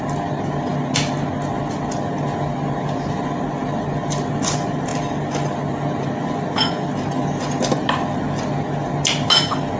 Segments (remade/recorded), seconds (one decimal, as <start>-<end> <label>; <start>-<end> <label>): 0.0-9.8 recorded